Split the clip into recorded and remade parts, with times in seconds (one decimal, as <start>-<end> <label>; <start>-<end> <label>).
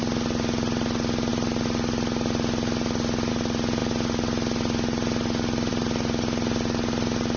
0.0-7.4 recorded